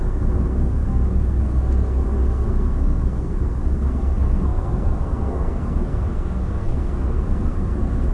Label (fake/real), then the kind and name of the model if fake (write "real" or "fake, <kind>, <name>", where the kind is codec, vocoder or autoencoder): fake, codec, SNAC